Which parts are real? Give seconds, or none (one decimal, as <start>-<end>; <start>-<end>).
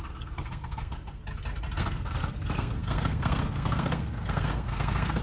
1.2-1.8